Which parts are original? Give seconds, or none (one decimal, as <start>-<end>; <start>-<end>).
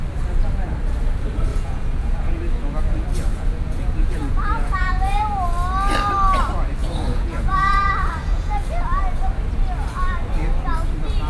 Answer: 0.0-1.5; 2.4-3.3; 5.2-6.8; 8.6-11.3